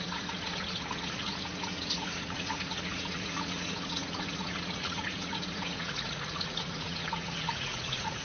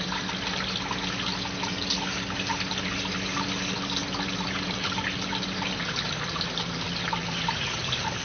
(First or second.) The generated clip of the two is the first